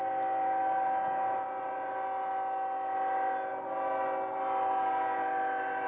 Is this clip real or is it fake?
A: real